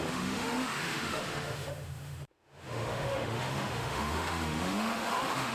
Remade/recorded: remade